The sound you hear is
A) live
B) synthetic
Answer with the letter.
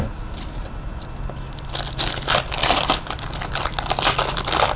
A